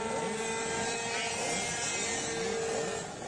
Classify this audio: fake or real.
real